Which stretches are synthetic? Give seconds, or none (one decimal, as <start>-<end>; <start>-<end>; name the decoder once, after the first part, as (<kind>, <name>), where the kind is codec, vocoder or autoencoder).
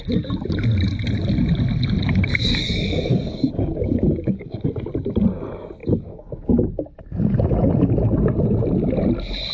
2.3-4.7 (codec, DAC); 5.8-6.3